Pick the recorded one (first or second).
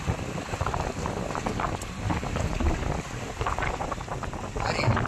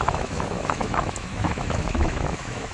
first